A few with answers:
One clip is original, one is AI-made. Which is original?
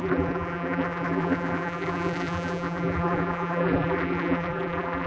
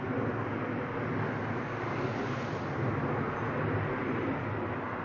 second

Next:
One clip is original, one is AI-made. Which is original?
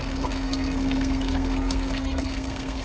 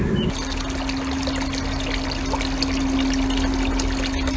second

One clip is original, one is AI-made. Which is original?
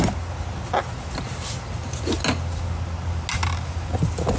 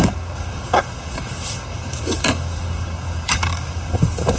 first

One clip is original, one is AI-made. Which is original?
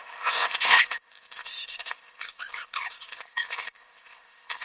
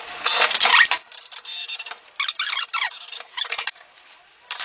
second